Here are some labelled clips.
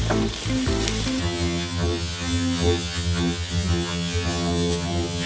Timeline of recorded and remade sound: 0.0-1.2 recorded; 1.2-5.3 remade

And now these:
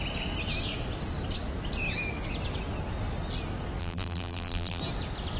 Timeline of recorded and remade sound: 0.0-3.8 recorded; 3.8-4.8 remade; 4.8-5.4 recorded

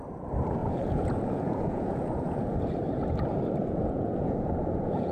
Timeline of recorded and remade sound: 0.0-0.6 recorded; 0.6-2.6 remade; 2.6-3.6 recorded; 3.6-5.1 remade